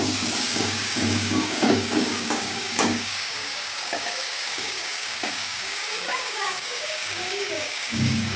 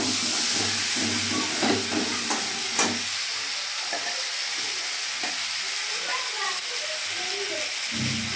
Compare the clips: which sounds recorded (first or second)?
second